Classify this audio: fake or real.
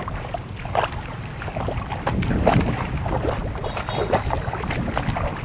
real